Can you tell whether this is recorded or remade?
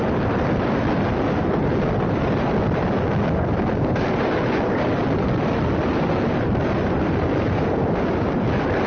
recorded